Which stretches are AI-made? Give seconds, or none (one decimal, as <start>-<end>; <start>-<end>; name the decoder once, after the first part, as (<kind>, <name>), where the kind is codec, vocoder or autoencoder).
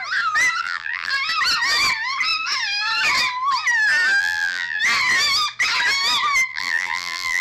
0.6-1.1 (vocoder, BigVGAN v2); 4.2-4.8; 6.5-7.4